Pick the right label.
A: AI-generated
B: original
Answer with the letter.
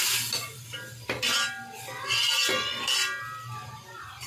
B